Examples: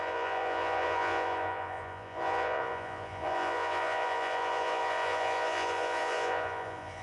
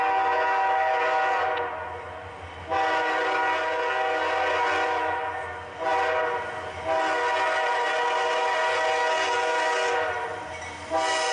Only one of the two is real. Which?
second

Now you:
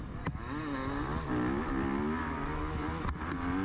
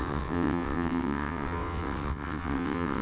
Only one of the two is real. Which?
first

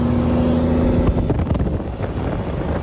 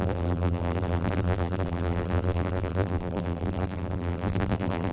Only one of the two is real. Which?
first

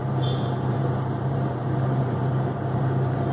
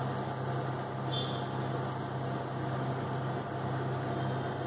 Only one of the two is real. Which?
second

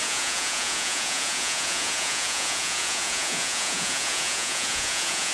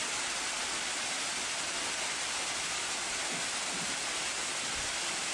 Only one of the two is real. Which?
second